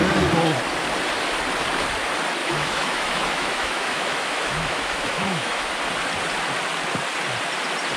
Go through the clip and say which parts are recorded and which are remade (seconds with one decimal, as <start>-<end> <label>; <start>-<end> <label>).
0.0-2.4 recorded; 2.4-5.7 remade; 5.7-8.0 recorded